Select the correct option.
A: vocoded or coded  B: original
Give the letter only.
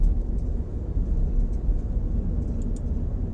B